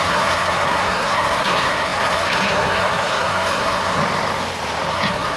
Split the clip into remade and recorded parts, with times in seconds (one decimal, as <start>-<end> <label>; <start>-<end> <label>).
0.0-4.0 remade; 4.0-4.9 recorded; 4.9-5.4 remade